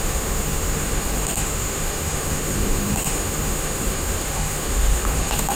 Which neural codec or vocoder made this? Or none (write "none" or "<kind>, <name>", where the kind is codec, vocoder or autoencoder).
autoencoder, DAC-VAE